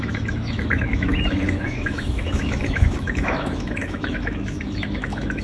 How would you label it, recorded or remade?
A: remade